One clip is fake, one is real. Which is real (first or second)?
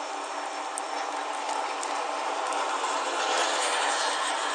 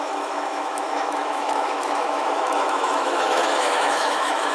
first